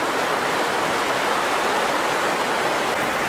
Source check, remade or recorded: recorded